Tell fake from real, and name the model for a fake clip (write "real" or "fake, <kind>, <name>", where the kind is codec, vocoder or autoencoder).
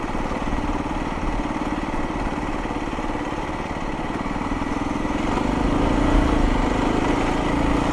real